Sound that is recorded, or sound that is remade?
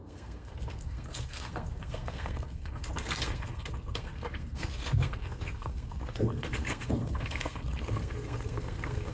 remade